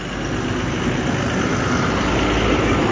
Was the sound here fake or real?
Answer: real